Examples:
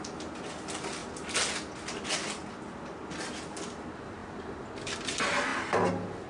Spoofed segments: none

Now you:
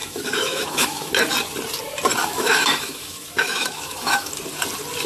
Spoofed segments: 0.0-1.1 (autoencoder, DAC-VAE); 2.2-4.3

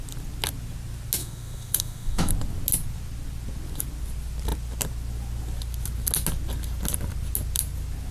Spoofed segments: 1.2-2.3 (autoencoder, DAC-VAE)

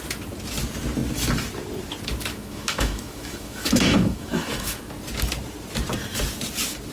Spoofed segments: 2.3-4.8 (autoencoder, DAC-VAE)

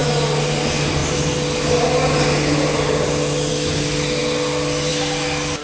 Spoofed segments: none

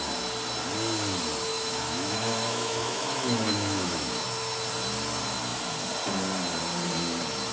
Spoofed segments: 1.5-4.2 (autoencoder, DAC-VAE)

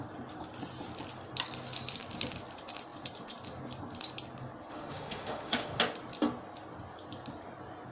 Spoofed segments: 4.7-5.8 (autoencoder, DAC-VAE)